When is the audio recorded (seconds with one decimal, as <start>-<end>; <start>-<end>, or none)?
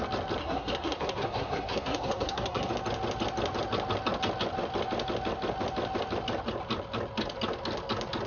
0.0-0.4; 2.7-8.3